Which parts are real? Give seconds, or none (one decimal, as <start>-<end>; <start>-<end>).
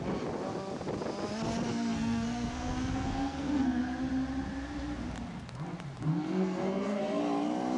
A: 0.0-1.7; 3.8-6.1; 7.2-7.8